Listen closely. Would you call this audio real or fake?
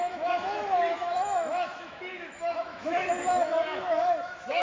fake